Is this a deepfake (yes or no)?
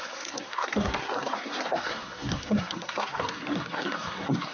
yes